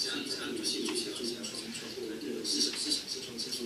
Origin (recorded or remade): recorded